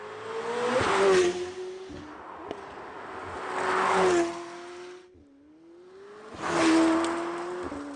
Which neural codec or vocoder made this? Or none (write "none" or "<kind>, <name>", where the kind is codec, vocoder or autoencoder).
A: none